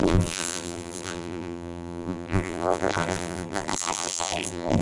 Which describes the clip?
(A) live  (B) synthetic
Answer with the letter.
B